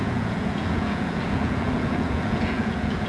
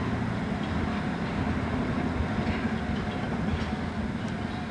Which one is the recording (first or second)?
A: second